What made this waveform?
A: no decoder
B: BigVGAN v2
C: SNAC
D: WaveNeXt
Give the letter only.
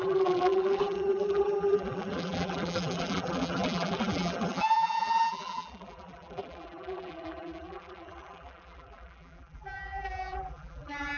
B